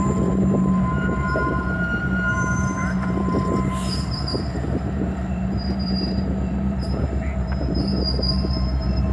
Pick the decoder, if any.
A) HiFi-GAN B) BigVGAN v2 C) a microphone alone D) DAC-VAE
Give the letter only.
B